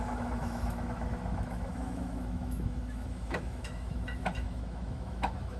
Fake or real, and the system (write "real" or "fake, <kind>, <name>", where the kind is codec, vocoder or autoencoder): fake, autoencoder, DAC-VAE